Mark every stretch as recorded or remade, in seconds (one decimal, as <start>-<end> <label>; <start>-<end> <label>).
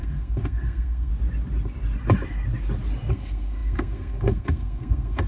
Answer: 0.0-1.1 remade; 1.1-3.1 recorded; 3.1-5.3 remade